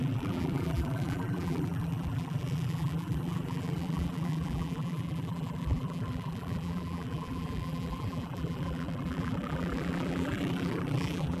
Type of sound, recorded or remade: remade